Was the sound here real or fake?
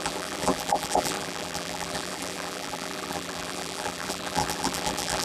fake